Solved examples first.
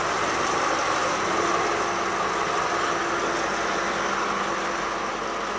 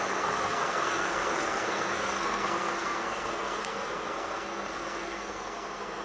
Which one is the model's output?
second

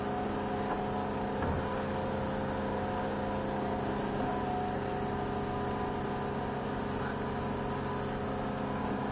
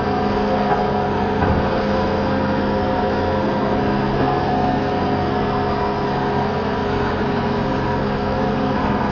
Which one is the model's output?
second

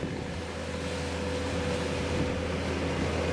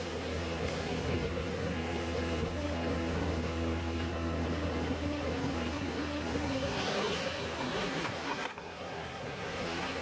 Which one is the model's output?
second